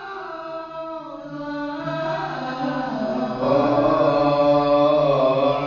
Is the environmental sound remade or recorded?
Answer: recorded